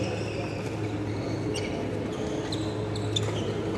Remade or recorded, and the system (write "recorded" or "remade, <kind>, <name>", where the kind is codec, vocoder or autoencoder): recorded